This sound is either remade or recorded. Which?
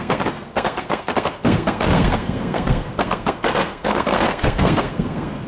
remade